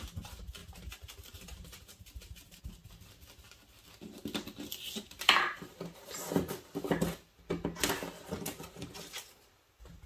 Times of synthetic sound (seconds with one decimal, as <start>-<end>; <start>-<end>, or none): 0.6-2.6

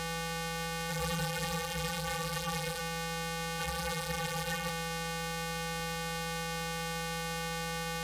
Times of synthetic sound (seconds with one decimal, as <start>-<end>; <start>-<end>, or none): 0.9-2.8; 3.6-4.7

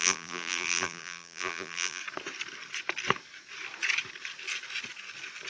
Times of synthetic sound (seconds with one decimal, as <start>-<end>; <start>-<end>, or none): 0.0-2.0

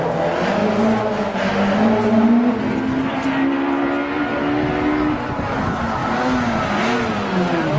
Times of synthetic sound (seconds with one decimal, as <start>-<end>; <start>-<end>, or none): none